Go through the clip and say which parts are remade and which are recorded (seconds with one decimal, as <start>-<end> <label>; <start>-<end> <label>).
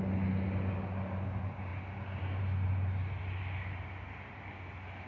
0.0-5.1 recorded